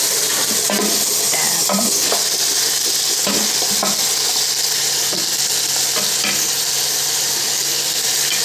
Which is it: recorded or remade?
recorded